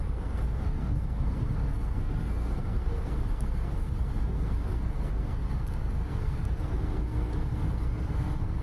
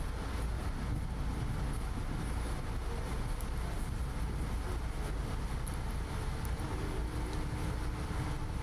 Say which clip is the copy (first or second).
first